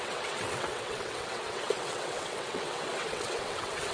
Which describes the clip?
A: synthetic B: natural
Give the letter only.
A